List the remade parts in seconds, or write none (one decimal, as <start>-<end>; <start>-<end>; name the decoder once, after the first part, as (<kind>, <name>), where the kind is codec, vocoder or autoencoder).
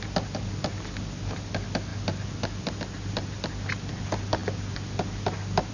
none